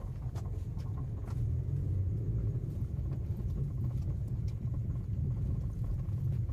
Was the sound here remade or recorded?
remade